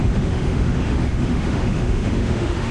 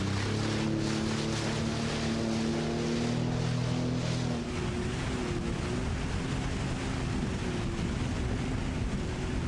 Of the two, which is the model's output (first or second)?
first